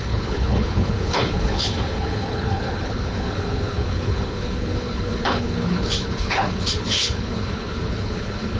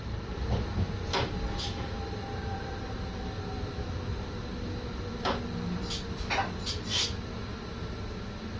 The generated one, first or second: first